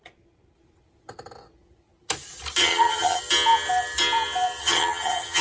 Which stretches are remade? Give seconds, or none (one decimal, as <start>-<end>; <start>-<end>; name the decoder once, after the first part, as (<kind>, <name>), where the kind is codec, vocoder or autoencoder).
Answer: 2.6-3.2 (vocoder, HiFi-GAN); 4.6-5.4